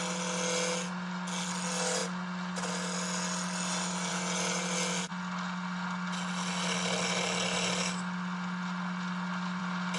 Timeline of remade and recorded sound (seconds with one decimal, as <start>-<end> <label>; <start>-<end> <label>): 0.0-10.0 recorded